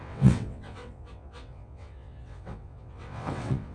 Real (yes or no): no